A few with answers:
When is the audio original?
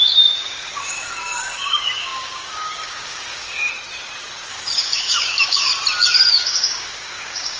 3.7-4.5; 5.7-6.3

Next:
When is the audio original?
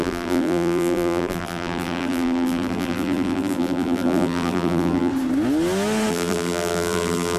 5.1-6.1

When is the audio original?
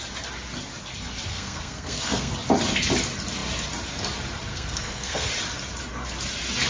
0.0-1.3; 2.3-4.5; 5.3-6.7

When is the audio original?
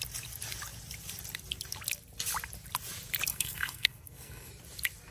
0.0-3.3; 4.5-5.1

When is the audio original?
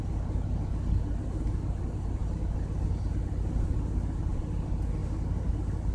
0.0-5.9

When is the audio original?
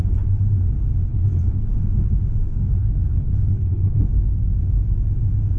0.0-1.1; 1.7-2.8; 4.0-5.6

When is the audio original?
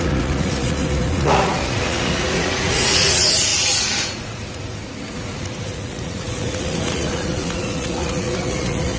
none